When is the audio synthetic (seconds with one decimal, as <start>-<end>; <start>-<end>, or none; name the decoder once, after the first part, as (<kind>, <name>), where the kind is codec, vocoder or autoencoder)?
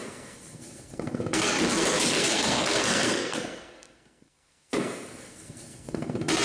0.0-6.4 (codec, SNAC)